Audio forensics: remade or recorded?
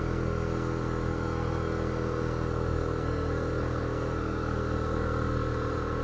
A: remade